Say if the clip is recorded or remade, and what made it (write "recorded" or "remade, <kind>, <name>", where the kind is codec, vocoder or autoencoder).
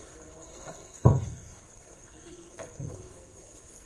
remade, codec, SNAC